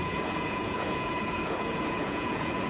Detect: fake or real fake